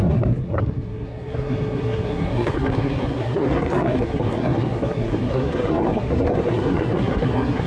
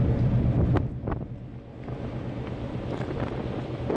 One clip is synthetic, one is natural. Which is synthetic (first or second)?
first